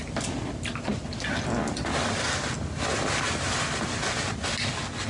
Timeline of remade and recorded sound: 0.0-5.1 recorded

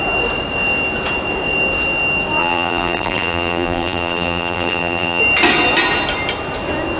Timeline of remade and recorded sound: 0.0-2.4 recorded; 2.4-5.2 remade; 5.2-7.0 recorded

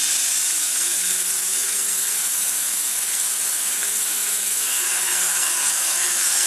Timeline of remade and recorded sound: 0.0-0.6 recorded; 0.6-6.5 remade

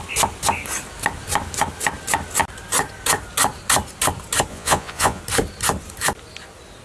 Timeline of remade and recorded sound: 0.0-4.5 recorded; 4.5-5.2 remade; 5.2-6.8 recorded

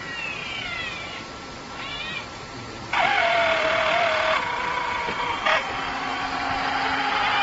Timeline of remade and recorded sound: 0.0-0.4 recorded; 0.4-2.0 remade; 2.0-3.4 recorded; 3.4-5.0 remade; 5.0-6.1 recorded; 6.1-7.0 remade; 7.0-7.4 recorded